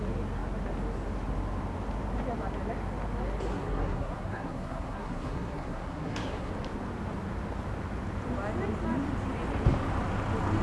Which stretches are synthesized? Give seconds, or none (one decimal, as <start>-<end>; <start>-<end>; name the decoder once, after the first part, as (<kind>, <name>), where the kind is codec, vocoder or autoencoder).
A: 3.5-6.5 (codec, SNAC)